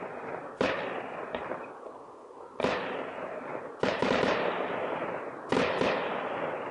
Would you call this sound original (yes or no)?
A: yes